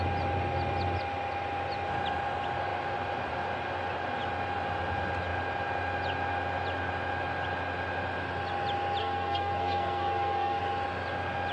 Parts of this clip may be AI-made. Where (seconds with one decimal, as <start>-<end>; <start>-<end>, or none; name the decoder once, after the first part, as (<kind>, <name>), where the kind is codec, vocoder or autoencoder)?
9.0-10.6 (codec, SNAC)